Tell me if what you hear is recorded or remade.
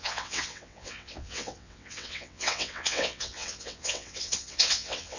remade